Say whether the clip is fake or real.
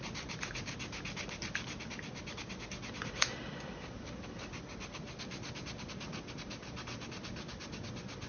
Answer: real